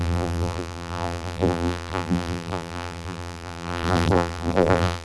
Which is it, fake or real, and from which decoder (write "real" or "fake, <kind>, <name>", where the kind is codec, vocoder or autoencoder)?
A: fake, vocoder, BigVGAN v2